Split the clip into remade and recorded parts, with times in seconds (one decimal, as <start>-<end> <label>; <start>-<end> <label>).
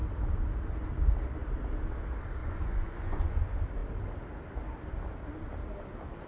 0.0-2.4 recorded; 2.4-3.4 remade; 3.4-6.3 recorded